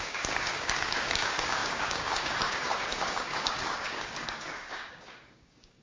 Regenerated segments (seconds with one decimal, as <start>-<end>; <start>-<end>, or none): 0.0-5.8

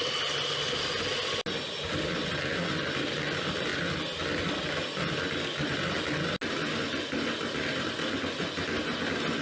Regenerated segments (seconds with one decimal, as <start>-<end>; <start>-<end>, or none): none

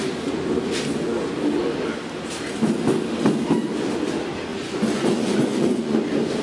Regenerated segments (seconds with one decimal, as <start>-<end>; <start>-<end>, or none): 4.5-6.0

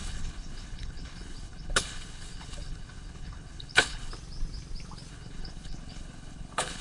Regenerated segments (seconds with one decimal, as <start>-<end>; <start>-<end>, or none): 0.0-4.1; 5.1-6.8

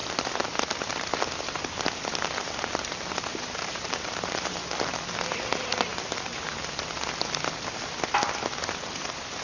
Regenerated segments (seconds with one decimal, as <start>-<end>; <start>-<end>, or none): 3.3-4.6; 5.9-6.6